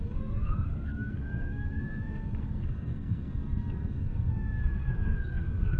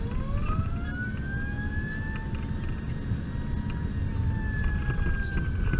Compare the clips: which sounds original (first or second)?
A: second